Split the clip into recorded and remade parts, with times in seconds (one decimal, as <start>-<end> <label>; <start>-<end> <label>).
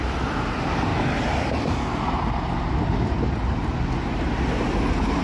0.0-5.2 recorded